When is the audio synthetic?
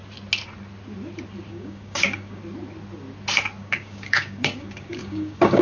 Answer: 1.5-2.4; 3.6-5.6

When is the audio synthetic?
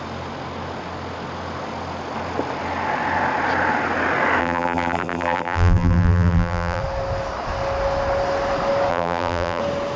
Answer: 4.4-6.8; 8.9-9.6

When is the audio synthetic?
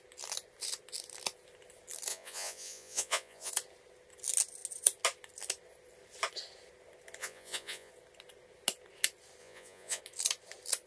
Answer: 2.1-3.5; 7.2-7.9; 9.4-10.0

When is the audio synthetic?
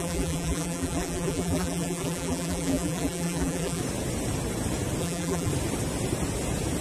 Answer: 0.0-3.8; 5.0-5.5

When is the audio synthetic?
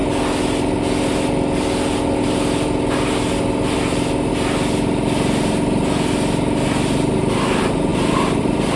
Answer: 4.3-7.9; 8.4-8.8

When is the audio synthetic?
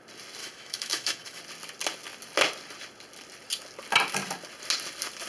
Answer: 0.4-1.4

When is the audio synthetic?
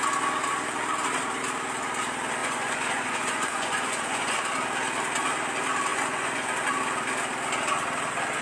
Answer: 2.4-4.4; 5.9-6.5